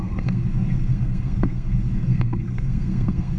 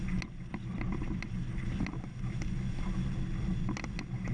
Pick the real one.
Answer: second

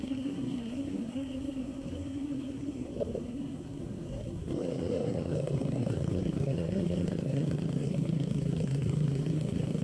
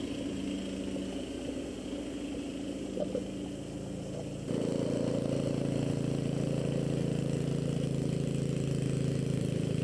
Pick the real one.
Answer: second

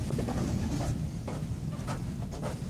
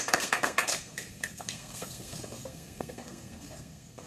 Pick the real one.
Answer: first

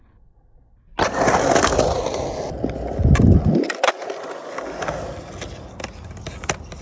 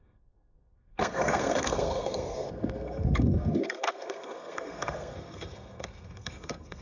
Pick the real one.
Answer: first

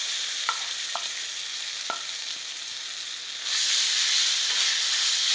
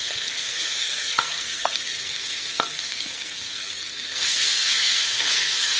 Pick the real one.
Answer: first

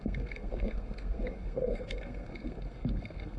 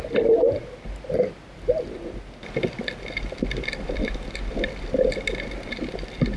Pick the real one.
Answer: second